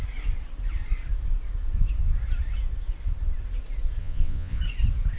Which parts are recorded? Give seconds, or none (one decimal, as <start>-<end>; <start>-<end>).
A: 0.0-4.0; 4.6-5.2